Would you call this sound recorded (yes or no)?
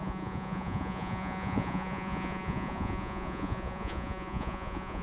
no